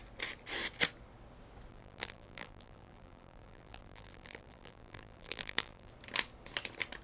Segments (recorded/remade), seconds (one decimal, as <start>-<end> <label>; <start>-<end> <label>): 0.0-1.7 recorded; 1.7-5.9 remade; 5.9-7.0 recorded